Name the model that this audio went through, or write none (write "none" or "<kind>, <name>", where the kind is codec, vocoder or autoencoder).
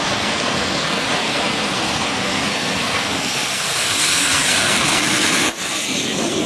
codec, SNAC